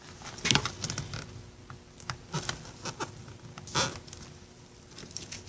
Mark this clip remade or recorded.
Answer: recorded